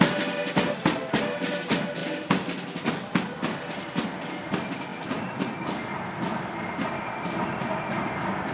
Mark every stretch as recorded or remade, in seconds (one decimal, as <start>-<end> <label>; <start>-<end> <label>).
0.0-8.5 recorded